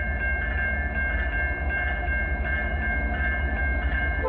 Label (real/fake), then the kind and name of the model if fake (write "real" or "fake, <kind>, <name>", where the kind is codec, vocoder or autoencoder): real